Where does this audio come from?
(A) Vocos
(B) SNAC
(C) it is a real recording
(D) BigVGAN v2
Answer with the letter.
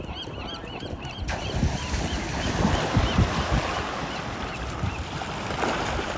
D